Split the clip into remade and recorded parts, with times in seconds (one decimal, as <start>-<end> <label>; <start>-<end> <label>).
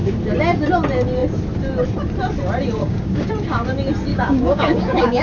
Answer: 0.0-2.8 recorded; 2.8-3.3 remade; 3.3-4.1 recorded; 4.1-5.2 remade